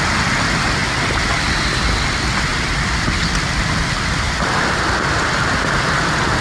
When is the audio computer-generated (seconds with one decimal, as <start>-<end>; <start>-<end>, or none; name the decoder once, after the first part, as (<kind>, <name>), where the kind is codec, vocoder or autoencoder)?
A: none